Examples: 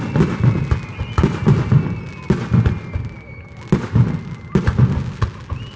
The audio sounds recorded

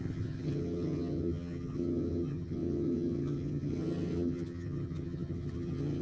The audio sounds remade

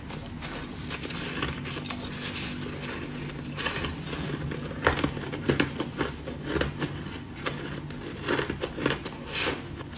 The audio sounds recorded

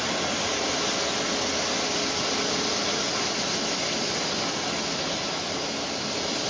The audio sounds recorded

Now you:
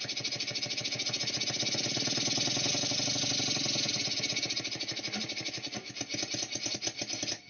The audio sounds recorded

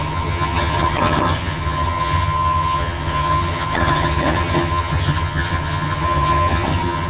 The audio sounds remade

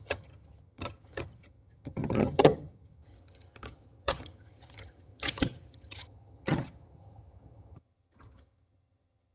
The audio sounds remade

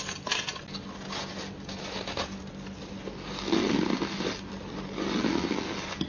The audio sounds recorded